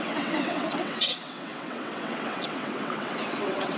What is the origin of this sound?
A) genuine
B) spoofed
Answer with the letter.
B